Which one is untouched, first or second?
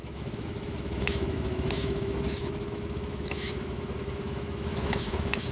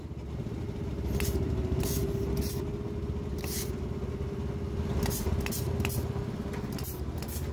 second